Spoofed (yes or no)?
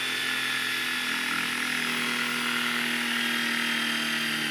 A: no